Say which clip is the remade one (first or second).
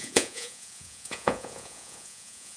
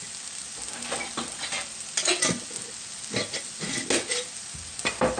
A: first